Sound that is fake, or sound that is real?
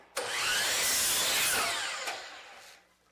real